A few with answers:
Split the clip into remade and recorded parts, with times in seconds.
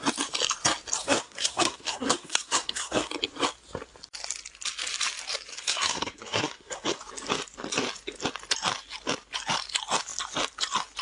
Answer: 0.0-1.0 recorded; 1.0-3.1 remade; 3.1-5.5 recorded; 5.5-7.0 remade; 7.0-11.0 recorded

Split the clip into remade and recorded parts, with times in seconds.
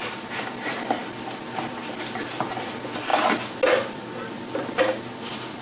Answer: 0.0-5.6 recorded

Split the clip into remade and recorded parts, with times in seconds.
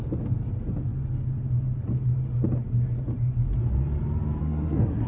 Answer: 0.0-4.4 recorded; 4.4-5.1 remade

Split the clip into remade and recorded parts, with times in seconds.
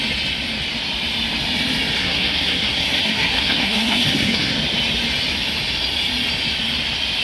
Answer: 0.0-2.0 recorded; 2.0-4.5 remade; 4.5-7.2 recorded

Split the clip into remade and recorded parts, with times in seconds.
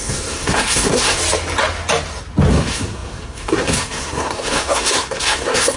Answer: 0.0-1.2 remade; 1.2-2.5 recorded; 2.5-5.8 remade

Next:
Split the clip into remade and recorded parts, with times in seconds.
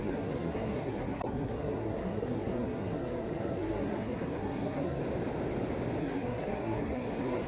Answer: 0.0-5.0 remade; 5.0-6.0 recorded; 6.0-7.5 remade